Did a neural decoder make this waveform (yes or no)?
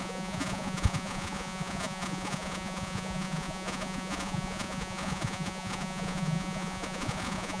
yes